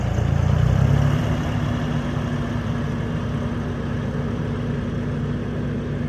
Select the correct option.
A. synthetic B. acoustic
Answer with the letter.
B